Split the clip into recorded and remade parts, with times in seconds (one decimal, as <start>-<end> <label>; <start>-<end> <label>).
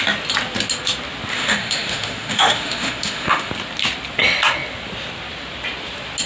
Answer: 0.0-1.3 recorded; 1.3-3.5 remade; 3.5-6.3 recorded